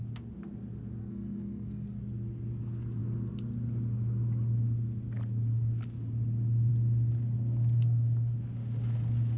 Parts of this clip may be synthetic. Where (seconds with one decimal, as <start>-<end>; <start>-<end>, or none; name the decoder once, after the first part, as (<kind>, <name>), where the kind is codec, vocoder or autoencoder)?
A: 1.0-2.0 (codec, SNAC)